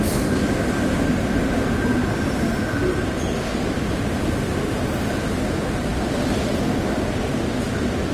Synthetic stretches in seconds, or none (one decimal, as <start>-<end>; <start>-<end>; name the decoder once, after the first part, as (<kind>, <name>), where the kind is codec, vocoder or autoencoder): none